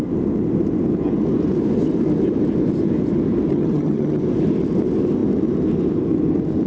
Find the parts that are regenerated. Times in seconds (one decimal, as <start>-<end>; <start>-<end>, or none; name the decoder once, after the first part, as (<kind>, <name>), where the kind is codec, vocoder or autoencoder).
3.5-4.2 (vocoder, HiFi-GAN)